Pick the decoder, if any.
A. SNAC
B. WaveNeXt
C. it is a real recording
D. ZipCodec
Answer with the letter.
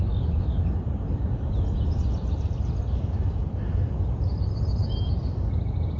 C